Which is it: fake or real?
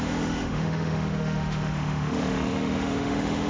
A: fake